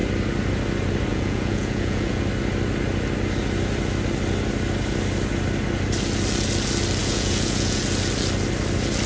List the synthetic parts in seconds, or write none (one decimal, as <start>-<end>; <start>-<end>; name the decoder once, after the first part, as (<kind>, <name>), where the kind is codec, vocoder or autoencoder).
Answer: 1.1-2.2 (vocoder, Vocos); 7.0-7.8